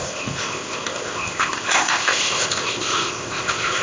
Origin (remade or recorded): remade